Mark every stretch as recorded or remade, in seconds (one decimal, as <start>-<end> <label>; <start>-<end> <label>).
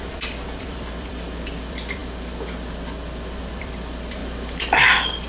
0.0-2.0 remade; 2.0-3.4 recorded; 3.4-4.2 remade; 4.2-4.8 recorded; 4.8-5.3 remade